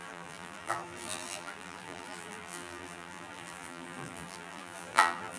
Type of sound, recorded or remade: remade